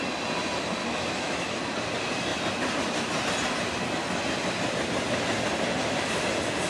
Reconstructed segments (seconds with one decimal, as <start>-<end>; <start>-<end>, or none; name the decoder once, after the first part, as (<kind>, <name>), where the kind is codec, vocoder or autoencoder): 0.8-1.6 (autoencoder, DAC-VAE)